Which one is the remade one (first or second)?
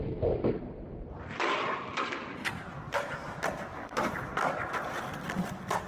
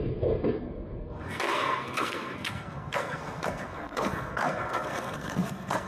second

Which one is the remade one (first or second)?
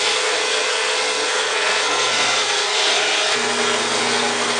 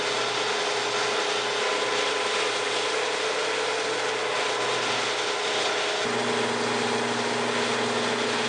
first